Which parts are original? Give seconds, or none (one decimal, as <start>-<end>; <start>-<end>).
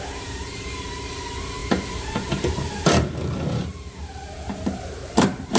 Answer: none